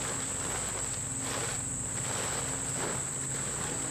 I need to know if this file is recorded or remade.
recorded